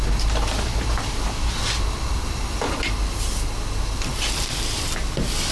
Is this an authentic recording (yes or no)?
yes